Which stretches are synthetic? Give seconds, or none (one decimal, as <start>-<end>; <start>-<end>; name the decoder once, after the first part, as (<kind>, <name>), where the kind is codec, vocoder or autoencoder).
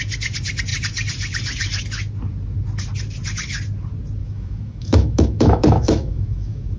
4.2-6.8 (autoencoder, DAC-VAE)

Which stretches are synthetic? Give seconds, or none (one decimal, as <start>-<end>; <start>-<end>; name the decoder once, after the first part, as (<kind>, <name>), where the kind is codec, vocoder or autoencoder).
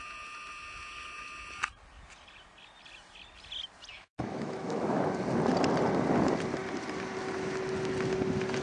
3.9-5.0 (autoencoder, DAC-VAE)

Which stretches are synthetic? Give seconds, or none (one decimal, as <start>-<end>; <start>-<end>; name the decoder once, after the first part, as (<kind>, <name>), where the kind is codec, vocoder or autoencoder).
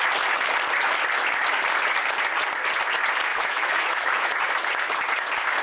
3.3-4.3 (autoencoder, DAC-VAE)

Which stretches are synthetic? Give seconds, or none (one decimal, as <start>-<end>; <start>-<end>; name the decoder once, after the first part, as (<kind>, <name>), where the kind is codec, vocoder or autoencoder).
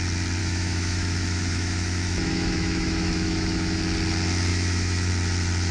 0.4-3.8 (autoencoder, DAC-VAE); 4.5-5.1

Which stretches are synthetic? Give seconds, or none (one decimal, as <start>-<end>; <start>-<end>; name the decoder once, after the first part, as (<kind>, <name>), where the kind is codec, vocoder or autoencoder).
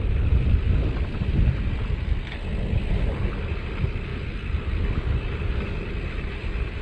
none